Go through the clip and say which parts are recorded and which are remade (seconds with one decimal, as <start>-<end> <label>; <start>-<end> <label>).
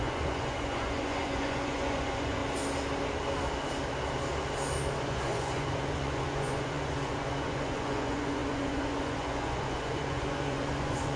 0.0-2.4 remade; 2.4-5.0 recorded; 5.0-11.2 remade